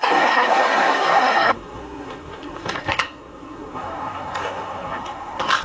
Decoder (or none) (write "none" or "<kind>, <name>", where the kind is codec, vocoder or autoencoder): codec, SNAC